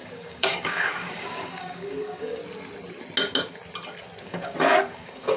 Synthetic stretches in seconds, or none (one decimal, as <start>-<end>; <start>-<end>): 0.0-2.4; 4.2-5.4

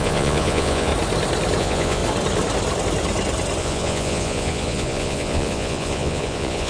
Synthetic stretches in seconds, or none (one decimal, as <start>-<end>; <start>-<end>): 0.0-0.9; 1.6-2.0; 3.6-6.7

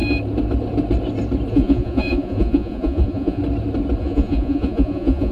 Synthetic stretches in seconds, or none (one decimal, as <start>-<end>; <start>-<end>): 1.5-3.4; 4.0-5.3

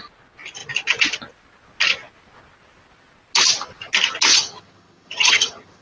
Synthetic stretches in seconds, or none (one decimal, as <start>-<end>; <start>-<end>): 4.3-5.8

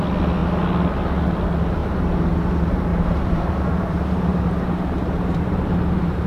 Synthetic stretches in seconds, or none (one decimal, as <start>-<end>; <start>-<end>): 1.8-2.4; 2.9-6.3

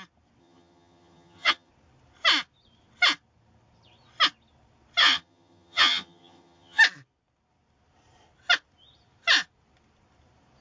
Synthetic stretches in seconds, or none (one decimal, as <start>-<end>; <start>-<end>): 0.4-1.7; 5.0-6.8

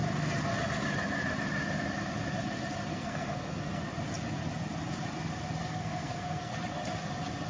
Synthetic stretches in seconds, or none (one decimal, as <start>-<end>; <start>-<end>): 2.9-3.8; 5.6-6.5

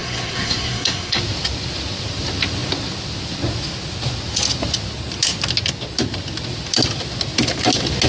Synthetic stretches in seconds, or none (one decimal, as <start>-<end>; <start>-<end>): 0.0-1.2